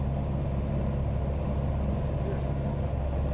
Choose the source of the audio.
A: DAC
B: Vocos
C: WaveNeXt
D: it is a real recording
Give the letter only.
D